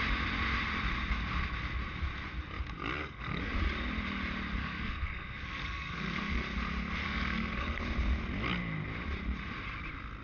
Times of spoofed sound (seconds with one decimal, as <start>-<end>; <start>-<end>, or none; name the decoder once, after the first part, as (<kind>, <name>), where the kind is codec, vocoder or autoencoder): 3.0-3.5 (codec, SNAC); 4.6-6.4; 7.0-7.8